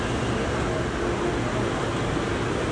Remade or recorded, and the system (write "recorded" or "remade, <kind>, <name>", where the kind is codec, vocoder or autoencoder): recorded